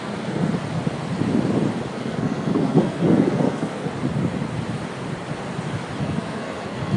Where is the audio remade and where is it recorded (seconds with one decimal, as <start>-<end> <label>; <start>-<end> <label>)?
0.0-0.5 remade; 0.5-1.9 recorded; 1.9-3.9 remade; 3.9-6.0 recorded; 6.0-7.0 remade